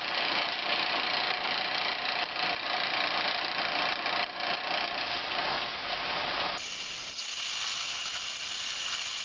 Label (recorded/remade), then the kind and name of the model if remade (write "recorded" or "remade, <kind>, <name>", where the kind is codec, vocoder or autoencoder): recorded